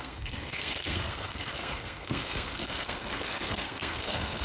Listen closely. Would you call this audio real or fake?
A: fake